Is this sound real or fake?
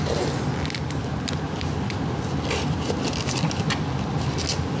real